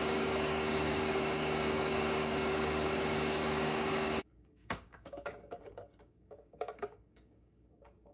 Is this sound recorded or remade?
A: remade